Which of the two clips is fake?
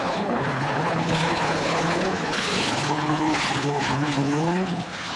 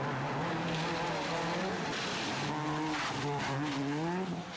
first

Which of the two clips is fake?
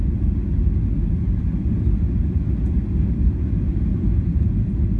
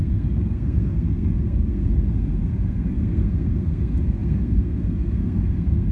second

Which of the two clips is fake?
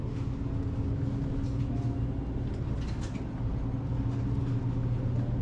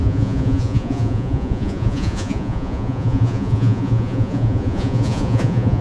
second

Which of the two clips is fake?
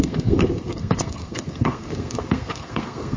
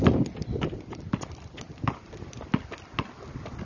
first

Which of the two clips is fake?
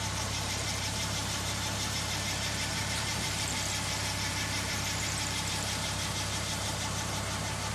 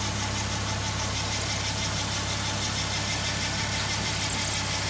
first